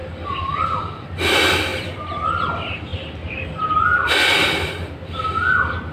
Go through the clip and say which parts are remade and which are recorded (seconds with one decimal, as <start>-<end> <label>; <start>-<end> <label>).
0.0-0.8 remade; 0.8-1.7 recorded; 1.7-2.5 remade; 2.5-5.9 recorded